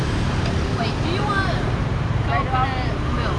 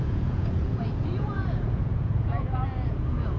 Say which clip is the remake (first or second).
second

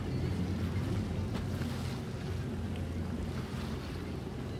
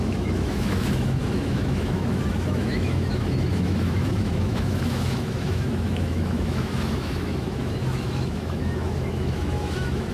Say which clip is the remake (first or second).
second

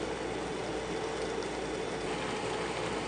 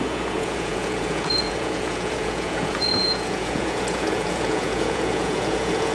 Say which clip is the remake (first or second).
second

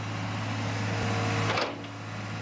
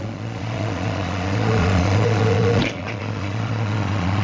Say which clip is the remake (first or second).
second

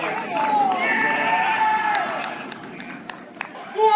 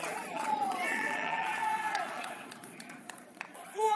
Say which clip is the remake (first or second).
second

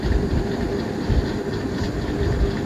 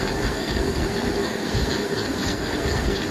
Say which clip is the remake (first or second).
second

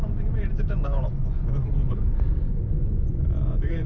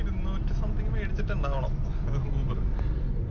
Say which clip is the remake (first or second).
first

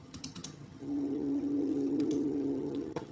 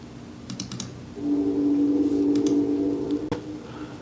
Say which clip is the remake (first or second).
first